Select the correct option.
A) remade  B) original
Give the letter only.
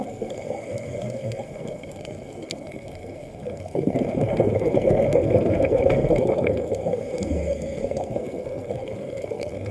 A